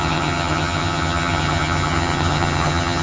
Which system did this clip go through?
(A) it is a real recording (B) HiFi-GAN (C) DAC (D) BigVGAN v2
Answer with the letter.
B